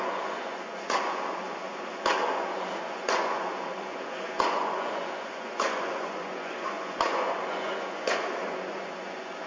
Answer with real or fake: fake